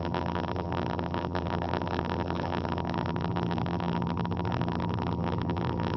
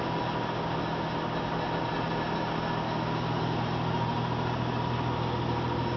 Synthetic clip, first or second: first